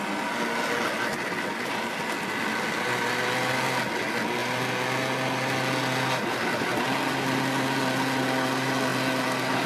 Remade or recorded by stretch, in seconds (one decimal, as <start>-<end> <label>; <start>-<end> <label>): 0.0-9.7 recorded